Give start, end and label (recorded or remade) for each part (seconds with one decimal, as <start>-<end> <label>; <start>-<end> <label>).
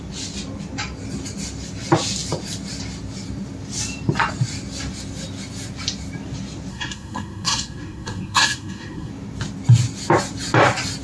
0.0-6.7 recorded; 6.7-9.1 remade; 9.1-11.0 recorded